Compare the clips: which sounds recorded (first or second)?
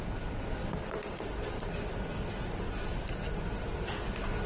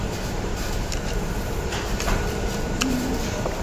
first